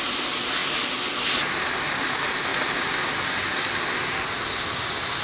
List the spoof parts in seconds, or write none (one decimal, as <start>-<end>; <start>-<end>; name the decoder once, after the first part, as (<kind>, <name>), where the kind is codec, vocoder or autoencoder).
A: none